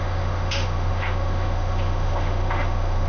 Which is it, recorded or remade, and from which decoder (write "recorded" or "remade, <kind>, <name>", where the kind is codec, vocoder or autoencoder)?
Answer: remade, autoencoder, DAC-VAE